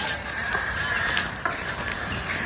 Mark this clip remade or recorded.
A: remade